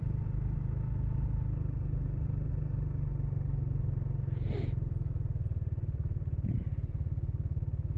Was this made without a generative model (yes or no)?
yes